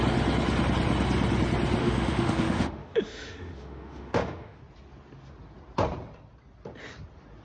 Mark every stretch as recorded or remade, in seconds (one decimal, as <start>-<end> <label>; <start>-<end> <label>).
0.0-1.8 recorded; 1.8-4.6 remade; 4.6-7.4 recorded